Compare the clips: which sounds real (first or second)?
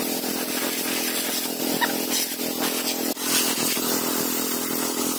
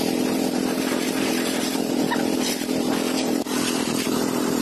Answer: first